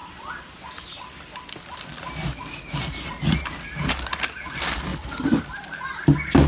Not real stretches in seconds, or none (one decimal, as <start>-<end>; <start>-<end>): 4.9-5.6